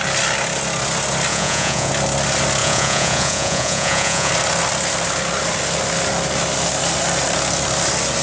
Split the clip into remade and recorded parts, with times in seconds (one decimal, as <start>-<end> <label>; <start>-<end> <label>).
0.0-1.3 recorded; 1.3-1.9 remade; 1.9-2.6 recorded; 2.6-4.3 remade; 4.3-8.2 recorded